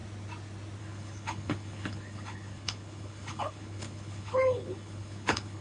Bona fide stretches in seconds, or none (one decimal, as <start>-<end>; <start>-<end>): 0.0-0.8